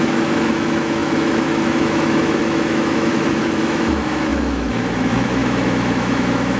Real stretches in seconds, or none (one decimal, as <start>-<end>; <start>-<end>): none